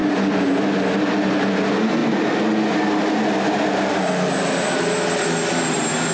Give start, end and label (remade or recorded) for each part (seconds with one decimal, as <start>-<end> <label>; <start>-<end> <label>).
0.0-6.1 recorded